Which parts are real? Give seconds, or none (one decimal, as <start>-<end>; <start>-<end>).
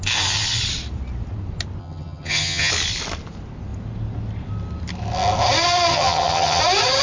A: 0.0-1.8; 2.7-5.9; 6.6-7.0